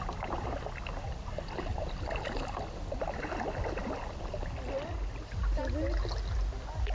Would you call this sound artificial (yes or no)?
no